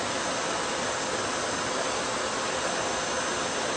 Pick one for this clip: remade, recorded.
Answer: recorded